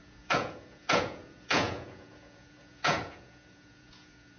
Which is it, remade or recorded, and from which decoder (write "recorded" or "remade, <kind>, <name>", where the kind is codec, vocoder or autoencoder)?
remade, vocoder, Vocos